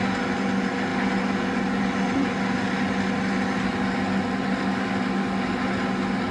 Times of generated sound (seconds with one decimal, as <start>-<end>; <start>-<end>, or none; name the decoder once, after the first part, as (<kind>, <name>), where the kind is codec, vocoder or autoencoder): none